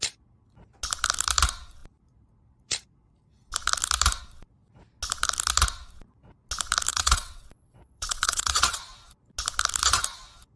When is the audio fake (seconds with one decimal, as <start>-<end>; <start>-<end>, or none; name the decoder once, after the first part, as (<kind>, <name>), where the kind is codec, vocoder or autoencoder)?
6.9-8.8 (vocoder, WaveNeXt)